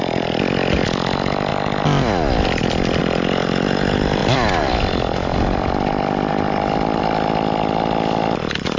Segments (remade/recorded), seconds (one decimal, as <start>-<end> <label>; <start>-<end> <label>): 0.0-8.8 recorded

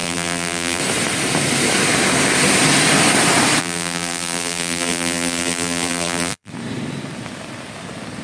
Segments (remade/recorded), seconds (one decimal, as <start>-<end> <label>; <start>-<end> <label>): 0.0-0.8 remade; 0.8-3.6 recorded; 3.6-6.5 remade; 6.5-8.2 recorded

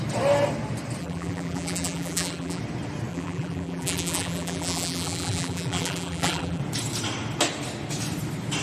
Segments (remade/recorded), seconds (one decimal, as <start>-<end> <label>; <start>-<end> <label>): 0.0-1.0 recorded; 1.0-2.6 remade; 2.6-3.1 recorded; 3.1-6.6 remade; 6.6-8.6 recorded